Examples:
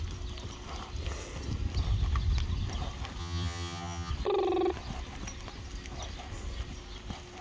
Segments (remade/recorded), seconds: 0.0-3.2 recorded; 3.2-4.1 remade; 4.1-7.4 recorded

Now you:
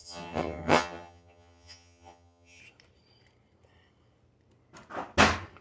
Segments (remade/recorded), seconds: 0.0-2.6 remade; 2.6-5.6 recorded

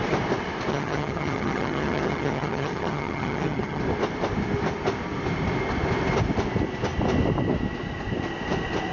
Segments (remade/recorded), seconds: 0.0-0.7 recorded; 0.7-3.8 remade; 3.8-8.9 recorded